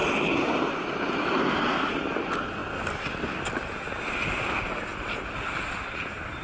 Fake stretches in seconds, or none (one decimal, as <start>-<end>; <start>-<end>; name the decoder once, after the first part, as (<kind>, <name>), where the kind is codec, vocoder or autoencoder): 4.9-6.4 (vocoder, BigVGAN v2)